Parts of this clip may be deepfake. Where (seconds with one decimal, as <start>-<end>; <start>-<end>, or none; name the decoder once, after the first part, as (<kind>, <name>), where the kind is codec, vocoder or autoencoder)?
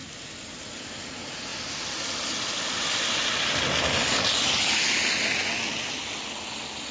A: none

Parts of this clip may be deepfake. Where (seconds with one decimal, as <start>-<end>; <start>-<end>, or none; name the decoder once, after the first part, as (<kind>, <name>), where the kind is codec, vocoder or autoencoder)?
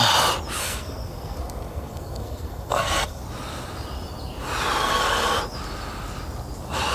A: 0.6-3.2 (codec, SNAC); 4.8-5.4